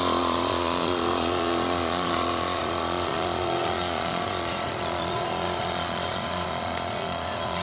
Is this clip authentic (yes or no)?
no